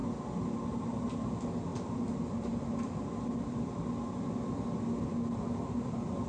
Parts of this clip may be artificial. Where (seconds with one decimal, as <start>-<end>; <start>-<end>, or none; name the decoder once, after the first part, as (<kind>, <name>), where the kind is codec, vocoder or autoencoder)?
none